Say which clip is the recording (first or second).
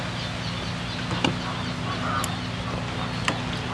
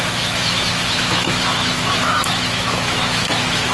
first